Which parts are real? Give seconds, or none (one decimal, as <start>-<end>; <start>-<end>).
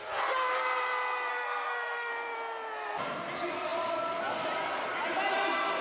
0.0-1.3; 2.1-5.8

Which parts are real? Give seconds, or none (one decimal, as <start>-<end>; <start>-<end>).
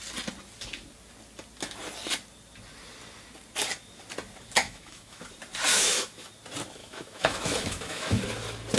0.0-4.6; 5.2-5.7; 6.3-6.8; 8.2-8.8